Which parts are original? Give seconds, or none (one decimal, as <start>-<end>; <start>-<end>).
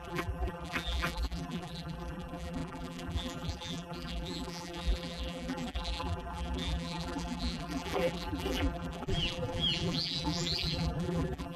none